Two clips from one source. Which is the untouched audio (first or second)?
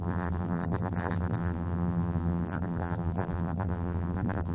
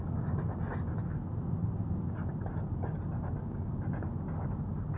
second